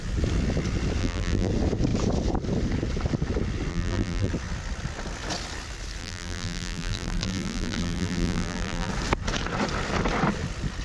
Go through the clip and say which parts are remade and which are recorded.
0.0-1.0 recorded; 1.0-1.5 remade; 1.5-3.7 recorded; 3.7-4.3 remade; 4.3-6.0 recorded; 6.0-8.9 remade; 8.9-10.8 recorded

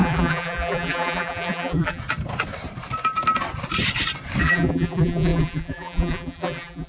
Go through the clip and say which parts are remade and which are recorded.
0.0-2.0 remade; 2.0-4.4 recorded; 4.4-6.9 remade

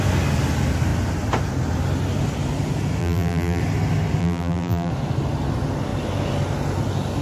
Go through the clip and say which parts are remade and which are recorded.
0.0-3.0 recorded; 3.0-3.6 remade; 3.6-4.2 recorded; 4.2-4.9 remade; 4.9-7.2 recorded

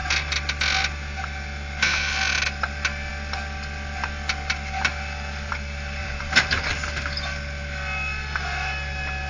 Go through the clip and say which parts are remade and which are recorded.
0.0-6.0 recorded; 6.0-6.7 remade; 6.7-9.3 recorded

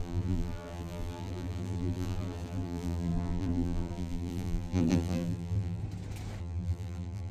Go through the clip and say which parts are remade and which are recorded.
0.0-5.8 remade; 5.8-6.4 recorded; 6.4-7.3 remade

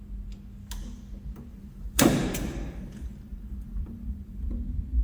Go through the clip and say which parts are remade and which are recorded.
0.0-1.5 recorded; 1.5-4.5 remade; 4.5-5.0 recorded